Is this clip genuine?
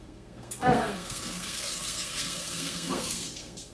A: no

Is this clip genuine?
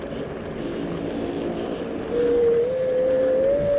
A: yes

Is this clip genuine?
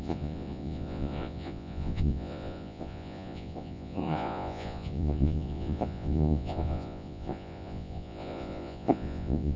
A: no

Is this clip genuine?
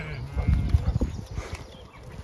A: yes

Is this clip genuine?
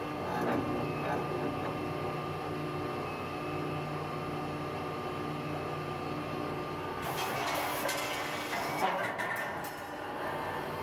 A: yes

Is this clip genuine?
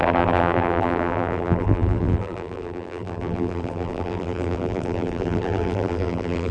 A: no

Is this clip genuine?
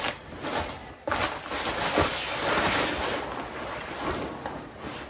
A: yes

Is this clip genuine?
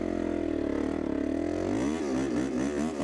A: yes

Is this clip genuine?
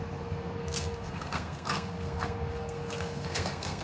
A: no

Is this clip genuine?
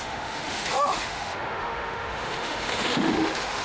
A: no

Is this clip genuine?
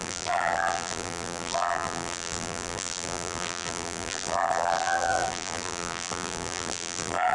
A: no